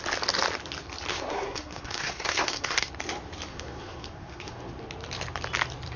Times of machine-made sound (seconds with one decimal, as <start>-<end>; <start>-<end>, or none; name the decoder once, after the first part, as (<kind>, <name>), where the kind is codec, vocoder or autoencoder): 1.1-2.9 (codec, SNAC); 3.5-4.7